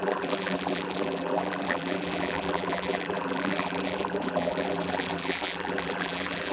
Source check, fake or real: fake